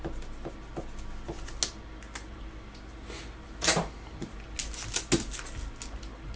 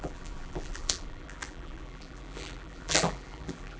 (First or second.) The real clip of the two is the first